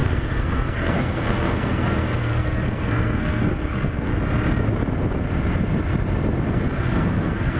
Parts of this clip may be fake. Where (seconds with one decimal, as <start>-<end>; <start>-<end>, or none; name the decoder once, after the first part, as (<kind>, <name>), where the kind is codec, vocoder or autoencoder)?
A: 0.0-4.1 (codec, SNAC); 6.5-7.6